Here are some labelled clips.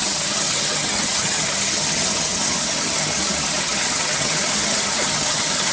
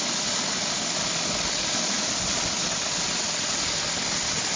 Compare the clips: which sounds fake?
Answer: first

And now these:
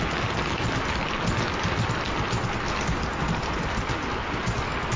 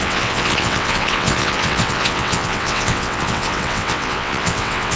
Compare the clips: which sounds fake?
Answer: second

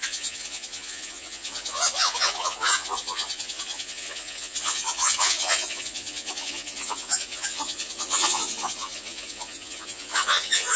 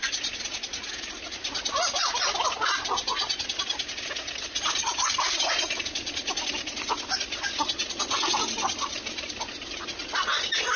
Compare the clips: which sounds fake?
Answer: first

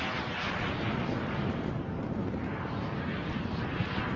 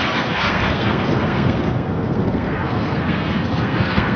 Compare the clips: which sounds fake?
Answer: second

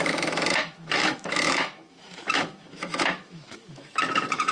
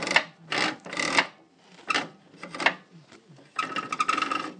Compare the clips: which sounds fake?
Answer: first